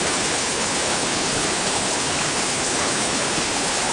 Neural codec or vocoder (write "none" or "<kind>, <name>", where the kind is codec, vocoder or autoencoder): codec, HILCodec